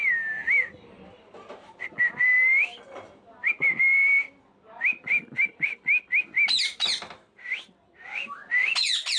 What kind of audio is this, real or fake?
real